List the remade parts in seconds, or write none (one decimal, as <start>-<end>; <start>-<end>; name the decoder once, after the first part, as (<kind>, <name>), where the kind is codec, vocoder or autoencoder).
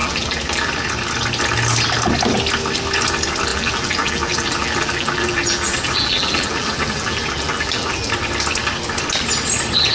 0.0-0.7 (vocoder, BigVGAN v2); 3.5-8.1